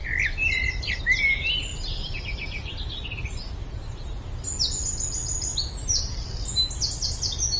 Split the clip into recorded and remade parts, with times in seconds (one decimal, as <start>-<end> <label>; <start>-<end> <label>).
0.0-1.0 remade; 1.0-1.7 recorded; 1.7-2.2 remade; 2.2-7.6 recorded